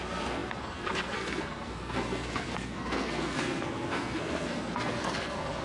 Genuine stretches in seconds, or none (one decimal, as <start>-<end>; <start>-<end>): none

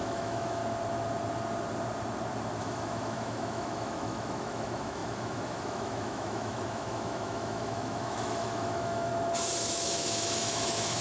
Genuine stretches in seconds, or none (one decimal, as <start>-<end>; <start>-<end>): 0.6-2.6; 9.1-9.7

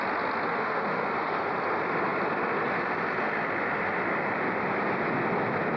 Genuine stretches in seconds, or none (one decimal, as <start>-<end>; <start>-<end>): 0.0-0.5; 1.5-5.8

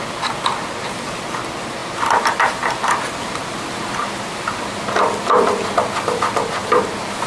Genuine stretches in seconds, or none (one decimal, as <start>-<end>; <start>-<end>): 0.0-7.3

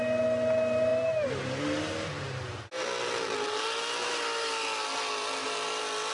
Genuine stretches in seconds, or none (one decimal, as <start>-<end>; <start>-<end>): 0.0-6.1

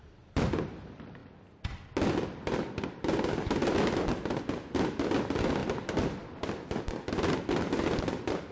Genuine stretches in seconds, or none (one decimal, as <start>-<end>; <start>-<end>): 0.0-8.5

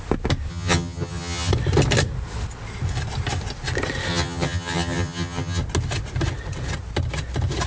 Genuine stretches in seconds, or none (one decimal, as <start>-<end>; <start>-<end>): 0.0-0.5; 1.5-4.1; 5.6-7.7

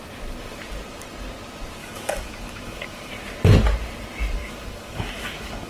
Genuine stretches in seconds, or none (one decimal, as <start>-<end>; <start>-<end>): 0.0-1.8; 3.1-4.4